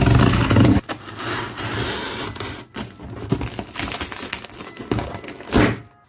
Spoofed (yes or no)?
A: no